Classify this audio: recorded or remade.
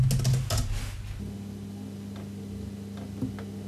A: recorded